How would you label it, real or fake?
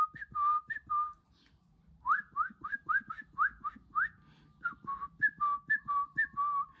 real